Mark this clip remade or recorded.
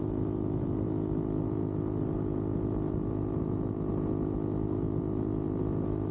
recorded